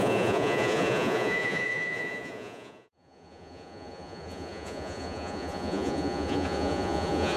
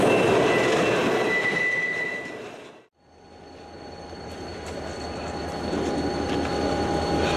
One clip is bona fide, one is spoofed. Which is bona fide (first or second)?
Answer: second